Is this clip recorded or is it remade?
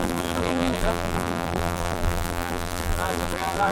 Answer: remade